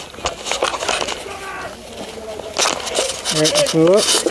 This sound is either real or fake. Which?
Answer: real